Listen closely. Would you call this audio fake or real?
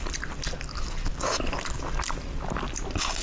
real